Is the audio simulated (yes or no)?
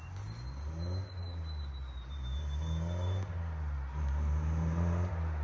no